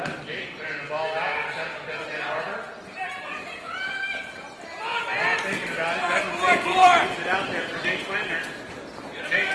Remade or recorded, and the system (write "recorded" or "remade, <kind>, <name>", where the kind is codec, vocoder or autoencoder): recorded